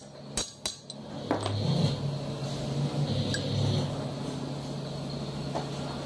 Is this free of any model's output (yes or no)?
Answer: yes